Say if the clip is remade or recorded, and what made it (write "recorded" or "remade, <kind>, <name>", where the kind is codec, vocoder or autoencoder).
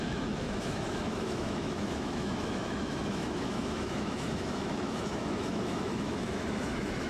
remade, autoencoder, DAC-VAE